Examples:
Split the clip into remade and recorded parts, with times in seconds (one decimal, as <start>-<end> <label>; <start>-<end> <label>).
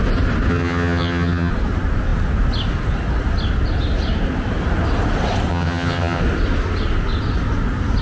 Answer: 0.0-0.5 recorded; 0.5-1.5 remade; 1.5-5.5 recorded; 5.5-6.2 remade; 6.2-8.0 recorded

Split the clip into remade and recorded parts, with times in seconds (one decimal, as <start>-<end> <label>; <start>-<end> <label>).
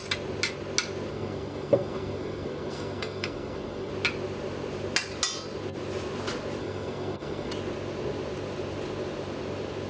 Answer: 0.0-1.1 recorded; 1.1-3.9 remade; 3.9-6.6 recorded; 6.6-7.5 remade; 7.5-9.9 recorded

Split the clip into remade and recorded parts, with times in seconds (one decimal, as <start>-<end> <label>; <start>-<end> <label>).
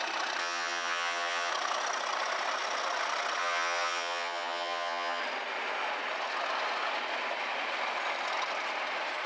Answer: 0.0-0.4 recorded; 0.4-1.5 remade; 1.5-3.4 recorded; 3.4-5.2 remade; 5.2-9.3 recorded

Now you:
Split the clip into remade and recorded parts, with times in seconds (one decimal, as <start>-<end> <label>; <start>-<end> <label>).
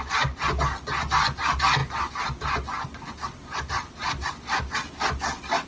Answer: 0.0-5.7 recorded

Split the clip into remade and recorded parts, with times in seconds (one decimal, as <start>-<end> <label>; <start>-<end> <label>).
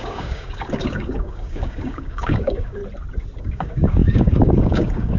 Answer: 0.0-2.8 remade; 2.8-3.4 recorded; 3.4-5.2 remade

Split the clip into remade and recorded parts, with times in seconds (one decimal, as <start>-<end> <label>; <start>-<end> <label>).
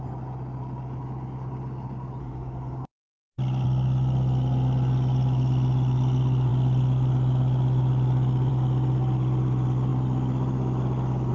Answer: 0.0-2.2 recorded; 2.2-2.9 remade; 2.9-11.3 recorded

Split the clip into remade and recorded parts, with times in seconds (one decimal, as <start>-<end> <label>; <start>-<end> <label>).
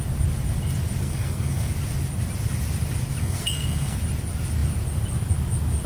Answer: 0.0-1.0 recorded; 1.0-1.7 remade; 1.7-3.2 recorded; 3.2-4.0 remade; 4.0-5.9 recorded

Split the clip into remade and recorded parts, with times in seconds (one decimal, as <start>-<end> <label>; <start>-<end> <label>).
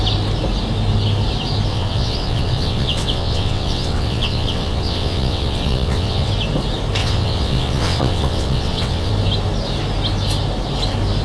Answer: 0.0-1.7 recorded; 1.7-6.3 remade; 6.3-7.0 recorded; 7.0-9.1 remade; 9.1-11.2 recorded